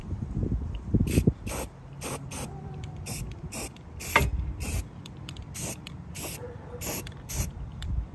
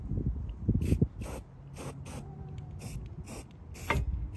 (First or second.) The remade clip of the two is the first